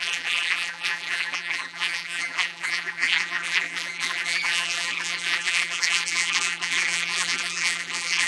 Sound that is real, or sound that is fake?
fake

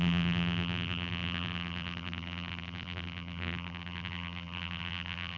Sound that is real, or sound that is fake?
fake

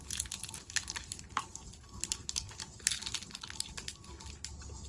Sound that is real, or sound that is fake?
real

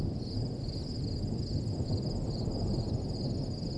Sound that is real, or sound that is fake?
real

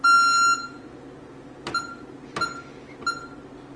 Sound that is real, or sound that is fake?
real